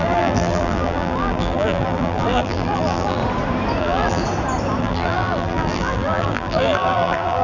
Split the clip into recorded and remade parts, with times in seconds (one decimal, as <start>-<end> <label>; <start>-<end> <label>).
0.0-3.2 remade; 3.2-3.8 recorded; 3.8-4.2 remade; 4.2-4.8 recorded; 4.8-7.4 remade